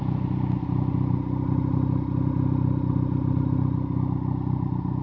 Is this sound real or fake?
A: real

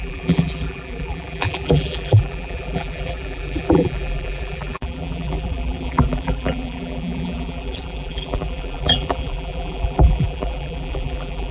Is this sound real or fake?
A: fake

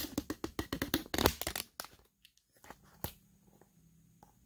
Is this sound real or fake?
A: real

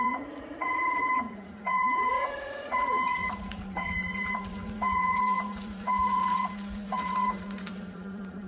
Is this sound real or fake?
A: fake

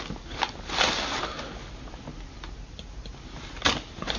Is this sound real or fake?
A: real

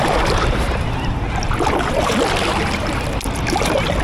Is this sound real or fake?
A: real